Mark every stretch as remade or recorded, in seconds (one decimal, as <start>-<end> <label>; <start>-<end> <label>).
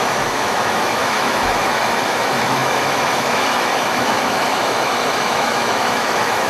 0.0-6.5 remade